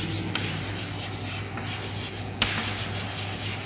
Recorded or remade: recorded